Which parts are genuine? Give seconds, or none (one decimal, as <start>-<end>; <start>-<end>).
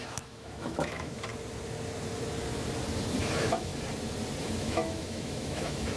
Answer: 1.3-3.2; 3.7-4.4